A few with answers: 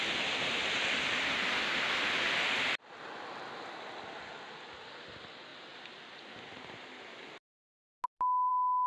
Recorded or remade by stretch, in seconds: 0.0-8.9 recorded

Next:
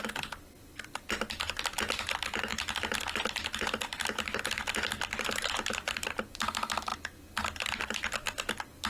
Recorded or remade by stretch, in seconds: 0.0-8.9 recorded

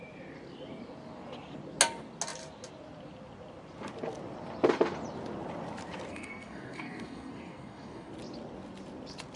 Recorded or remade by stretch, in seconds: 0.0-6.1 recorded; 6.1-8.1 remade; 8.1-9.4 recorded

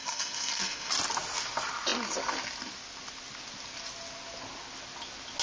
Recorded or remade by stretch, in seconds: 0.0-0.9 remade; 0.9-5.4 recorded

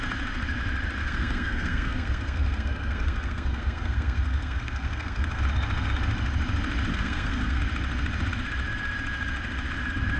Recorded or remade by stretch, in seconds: 0.0-1.0 recorded; 1.0-5.4 remade; 5.4-6.9 recorded; 6.9-7.6 remade; 7.6-10.2 recorded

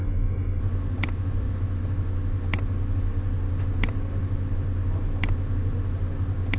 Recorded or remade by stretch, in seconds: 0.0-0.6 remade; 0.6-6.6 recorded

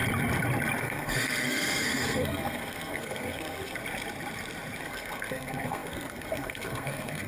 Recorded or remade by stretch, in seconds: 0.0-0.8 recorded; 0.8-3.8 remade; 3.8-4.8 recorded; 4.8-7.3 remade

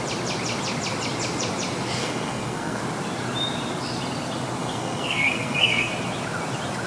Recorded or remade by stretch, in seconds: 0.0-2.0 recorded; 2.0-2.8 remade; 2.8-4.6 recorded; 4.6-5.9 remade; 5.9-6.9 recorded